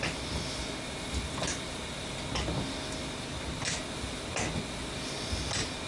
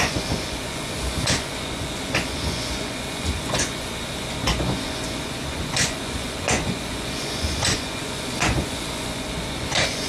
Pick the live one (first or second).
first